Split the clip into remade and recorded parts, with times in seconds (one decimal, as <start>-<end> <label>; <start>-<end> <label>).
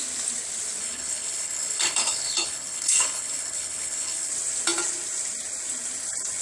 0.0-0.8 recorded; 0.8-4.3 remade; 4.3-6.4 recorded